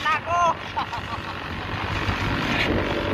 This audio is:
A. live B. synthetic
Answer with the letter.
A